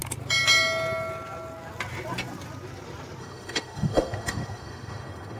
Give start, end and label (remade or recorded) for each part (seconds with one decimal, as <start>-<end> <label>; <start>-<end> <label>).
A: 0.0-3.2 recorded; 3.2-5.4 remade